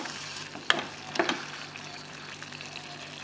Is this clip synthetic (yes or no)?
no